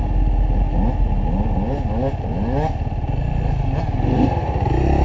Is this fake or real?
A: real